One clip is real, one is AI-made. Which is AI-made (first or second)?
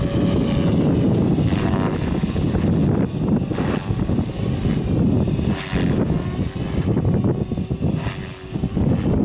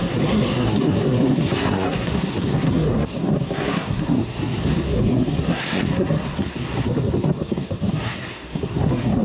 second